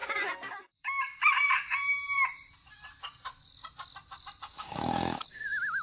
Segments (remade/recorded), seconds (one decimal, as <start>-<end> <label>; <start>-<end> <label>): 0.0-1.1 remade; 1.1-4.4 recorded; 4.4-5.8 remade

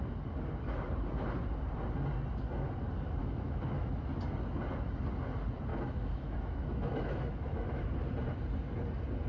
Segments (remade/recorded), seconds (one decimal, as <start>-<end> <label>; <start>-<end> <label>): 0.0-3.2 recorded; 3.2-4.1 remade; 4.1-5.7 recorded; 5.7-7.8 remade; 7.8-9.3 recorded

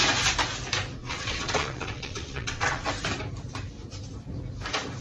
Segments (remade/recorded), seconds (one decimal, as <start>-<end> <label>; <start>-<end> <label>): 0.0-1.0 recorded; 1.0-2.9 remade; 2.9-5.0 recorded

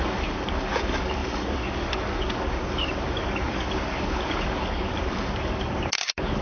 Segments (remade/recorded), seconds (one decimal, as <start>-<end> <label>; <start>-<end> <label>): 0.0-6.4 remade

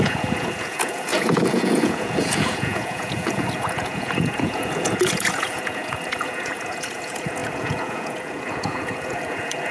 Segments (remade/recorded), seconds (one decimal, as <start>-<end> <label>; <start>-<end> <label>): 0.0-9.7 remade

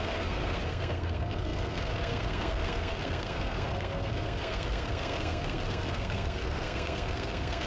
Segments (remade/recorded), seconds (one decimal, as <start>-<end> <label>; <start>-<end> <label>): 0.0-7.7 remade

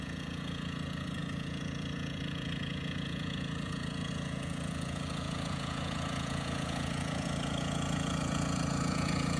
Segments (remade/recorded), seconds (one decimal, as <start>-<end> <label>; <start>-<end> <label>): 0.0-9.4 remade

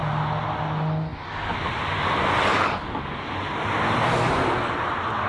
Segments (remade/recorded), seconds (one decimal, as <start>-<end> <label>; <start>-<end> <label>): 0.0-5.3 recorded